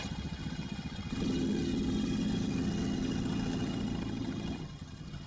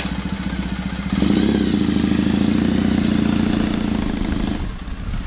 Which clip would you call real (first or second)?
second